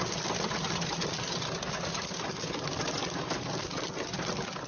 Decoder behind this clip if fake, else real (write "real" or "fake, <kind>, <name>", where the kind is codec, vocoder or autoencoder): real